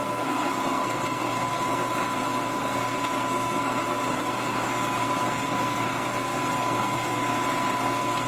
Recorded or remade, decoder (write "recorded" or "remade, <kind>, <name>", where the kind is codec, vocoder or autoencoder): remade, codec, SNAC